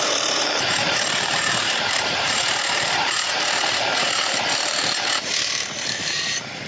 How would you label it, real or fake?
fake